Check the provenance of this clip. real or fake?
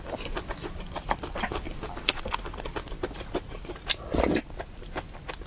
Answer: real